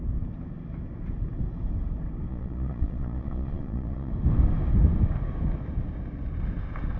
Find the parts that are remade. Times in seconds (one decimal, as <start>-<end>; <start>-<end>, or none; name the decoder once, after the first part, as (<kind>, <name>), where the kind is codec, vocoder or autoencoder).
2.3-4.1 (vocoder, Vocos)